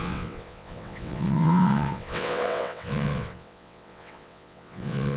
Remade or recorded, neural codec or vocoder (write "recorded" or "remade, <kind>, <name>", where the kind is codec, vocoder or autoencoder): remade, vocoder, WaveNeXt